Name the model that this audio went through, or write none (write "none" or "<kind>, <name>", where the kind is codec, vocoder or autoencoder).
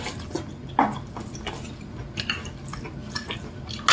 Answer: none